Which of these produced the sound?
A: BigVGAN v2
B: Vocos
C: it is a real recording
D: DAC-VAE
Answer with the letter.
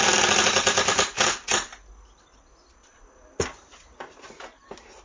C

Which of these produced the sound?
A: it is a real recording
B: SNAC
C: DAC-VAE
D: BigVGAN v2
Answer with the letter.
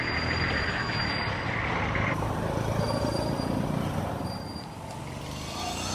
A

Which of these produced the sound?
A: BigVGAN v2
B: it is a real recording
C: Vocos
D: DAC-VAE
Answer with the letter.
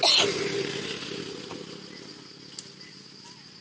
B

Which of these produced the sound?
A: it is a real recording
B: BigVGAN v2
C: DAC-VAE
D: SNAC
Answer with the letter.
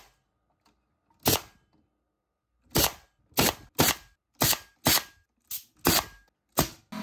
A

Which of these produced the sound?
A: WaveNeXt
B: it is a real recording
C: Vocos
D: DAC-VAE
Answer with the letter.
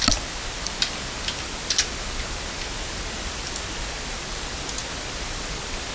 B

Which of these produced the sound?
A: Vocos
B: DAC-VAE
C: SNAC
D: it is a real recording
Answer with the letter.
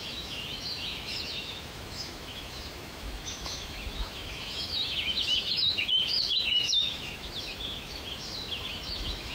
B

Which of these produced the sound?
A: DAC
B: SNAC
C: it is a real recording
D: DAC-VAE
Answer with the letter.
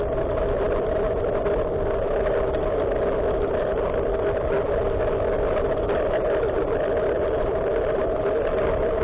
C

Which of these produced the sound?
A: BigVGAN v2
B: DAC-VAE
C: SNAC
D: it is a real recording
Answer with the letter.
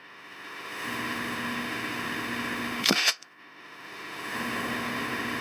B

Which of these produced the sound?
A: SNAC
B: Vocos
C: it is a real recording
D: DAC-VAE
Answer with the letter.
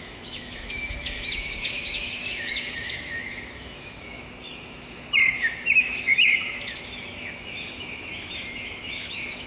D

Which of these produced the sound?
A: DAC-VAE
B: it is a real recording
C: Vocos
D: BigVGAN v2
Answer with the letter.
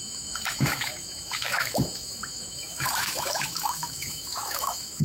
A